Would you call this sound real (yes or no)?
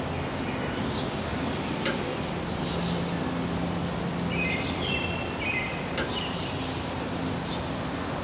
yes